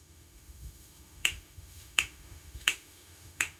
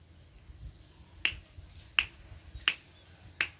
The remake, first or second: first